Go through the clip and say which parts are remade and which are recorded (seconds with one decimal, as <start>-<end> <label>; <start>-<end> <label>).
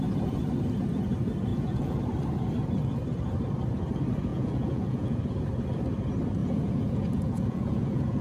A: 0.0-1.5 recorded; 1.5-2.0 remade; 2.0-4.3 recorded; 4.3-5.2 remade; 5.2-6.4 recorded; 6.4-8.2 remade